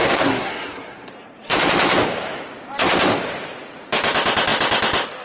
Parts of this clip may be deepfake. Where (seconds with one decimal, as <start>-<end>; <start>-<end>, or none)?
0.0-1.1